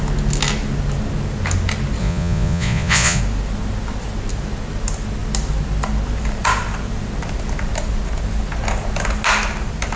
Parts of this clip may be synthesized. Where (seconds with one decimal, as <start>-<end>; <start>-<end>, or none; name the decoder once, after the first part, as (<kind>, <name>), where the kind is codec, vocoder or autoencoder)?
2.0-3.2 (vocoder, Vocos)